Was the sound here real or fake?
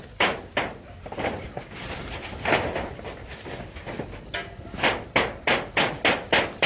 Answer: real